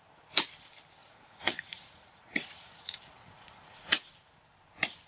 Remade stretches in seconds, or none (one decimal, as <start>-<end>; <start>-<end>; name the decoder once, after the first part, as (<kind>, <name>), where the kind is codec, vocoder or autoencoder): 1.0-4.1 (vocoder, Vocos)